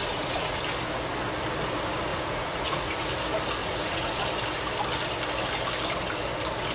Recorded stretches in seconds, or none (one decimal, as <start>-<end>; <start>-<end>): 0.6-2.1; 3.1-3.6; 4.2-6.7